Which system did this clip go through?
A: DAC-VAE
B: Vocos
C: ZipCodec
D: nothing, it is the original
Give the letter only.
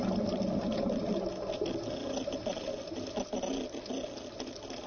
D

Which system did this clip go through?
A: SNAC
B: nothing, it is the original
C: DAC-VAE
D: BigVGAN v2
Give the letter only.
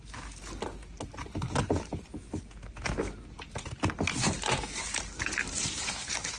B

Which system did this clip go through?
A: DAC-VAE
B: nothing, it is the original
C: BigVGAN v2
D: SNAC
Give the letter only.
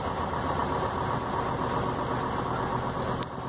B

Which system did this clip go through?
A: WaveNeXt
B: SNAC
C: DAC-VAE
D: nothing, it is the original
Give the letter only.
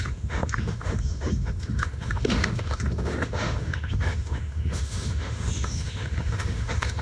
C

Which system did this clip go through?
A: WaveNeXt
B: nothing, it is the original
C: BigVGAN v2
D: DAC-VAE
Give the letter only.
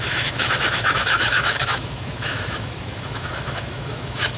D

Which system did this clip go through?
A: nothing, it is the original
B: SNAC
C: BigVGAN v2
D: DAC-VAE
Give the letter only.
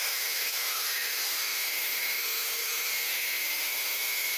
D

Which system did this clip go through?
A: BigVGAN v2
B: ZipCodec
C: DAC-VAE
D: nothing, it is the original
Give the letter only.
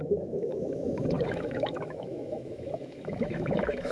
C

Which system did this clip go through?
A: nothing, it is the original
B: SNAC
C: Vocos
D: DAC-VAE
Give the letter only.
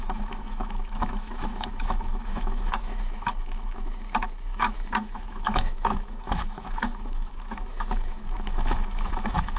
D